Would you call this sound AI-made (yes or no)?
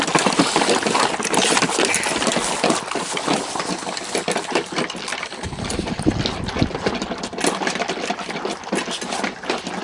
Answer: no